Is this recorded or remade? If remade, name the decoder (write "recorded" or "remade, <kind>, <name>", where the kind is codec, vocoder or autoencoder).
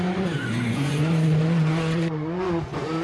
remade, vocoder, Vocos